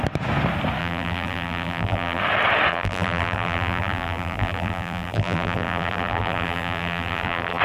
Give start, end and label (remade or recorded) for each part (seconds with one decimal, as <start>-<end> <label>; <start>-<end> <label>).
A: 0.0-0.8 recorded; 0.8-2.2 remade; 2.2-2.7 recorded; 2.7-7.6 remade